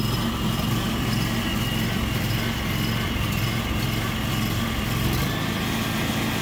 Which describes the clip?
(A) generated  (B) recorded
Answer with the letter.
B